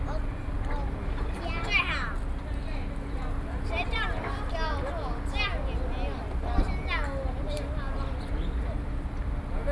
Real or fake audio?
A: real